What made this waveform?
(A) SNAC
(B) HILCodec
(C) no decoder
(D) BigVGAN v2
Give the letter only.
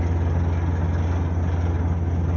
C